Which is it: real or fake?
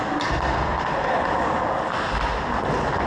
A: real